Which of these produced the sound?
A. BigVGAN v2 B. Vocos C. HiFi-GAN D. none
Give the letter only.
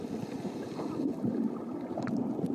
D